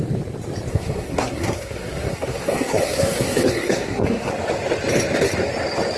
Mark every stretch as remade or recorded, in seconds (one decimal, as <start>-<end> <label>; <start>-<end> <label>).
0.0-0.7 recorded; 0.7-4.3 remade; 4.3-6.0 recorded